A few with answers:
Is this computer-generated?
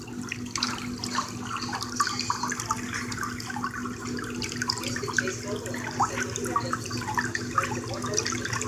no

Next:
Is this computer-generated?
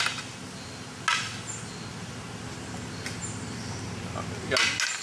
no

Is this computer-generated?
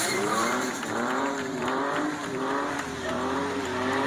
yes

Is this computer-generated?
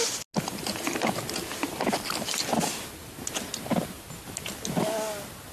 no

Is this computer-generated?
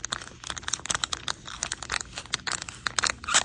no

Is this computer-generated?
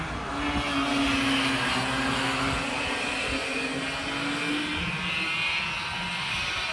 no